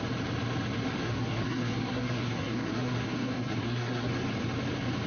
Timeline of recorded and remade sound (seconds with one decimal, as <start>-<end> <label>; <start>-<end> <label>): 0.0-1.0 recorded; 1.0-4.1 remade; 4.1-5.1 recorded